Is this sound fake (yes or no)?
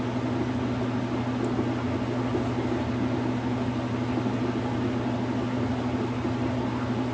no